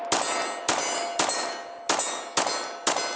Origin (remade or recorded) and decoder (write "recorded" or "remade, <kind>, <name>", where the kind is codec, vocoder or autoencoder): recorded